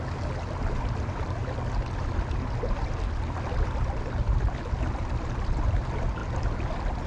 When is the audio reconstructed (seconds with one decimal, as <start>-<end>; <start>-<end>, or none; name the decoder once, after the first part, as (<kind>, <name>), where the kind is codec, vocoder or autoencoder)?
none